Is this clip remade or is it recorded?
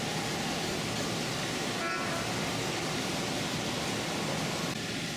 recorded